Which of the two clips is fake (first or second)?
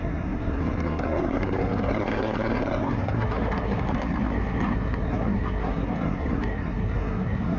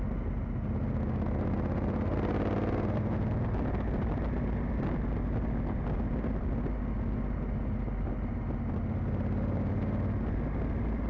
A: first